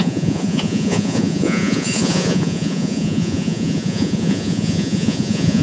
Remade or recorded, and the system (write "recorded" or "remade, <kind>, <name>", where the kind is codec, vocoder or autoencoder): remade, vocoder, Vocos